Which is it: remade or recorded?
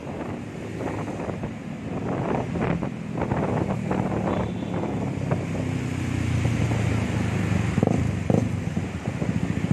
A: recorded